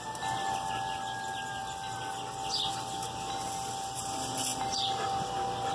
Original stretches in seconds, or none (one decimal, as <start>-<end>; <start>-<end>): 0.0-5.7